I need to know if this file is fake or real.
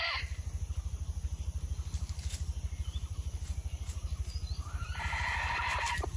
fake